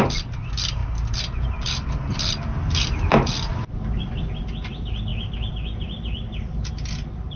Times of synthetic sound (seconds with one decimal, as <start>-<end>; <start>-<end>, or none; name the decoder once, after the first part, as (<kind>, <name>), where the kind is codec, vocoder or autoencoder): none